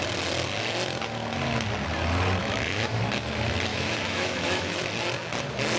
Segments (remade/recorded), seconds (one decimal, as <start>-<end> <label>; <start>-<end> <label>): 0.0-2.4 recorded; 2.4-3.0 remade; 3.0-3.7 recorded; 3.7-4.8 remade; 4.8-5.8 recorded